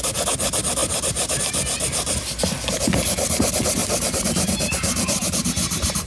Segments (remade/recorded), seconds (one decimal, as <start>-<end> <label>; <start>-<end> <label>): 0.0-3.8 recorded; 3.8-6.1 remade